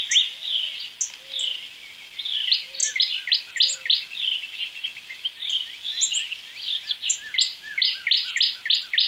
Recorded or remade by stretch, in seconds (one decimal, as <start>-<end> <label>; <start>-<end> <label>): 0.0-2.8 recorded; 2.8-3.5 remade; 3.5-4.7 recorded; 4.7-7.8 remade; 7.8-9.1 recorded